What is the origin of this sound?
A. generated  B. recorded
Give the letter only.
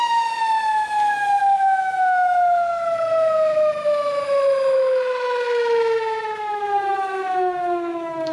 A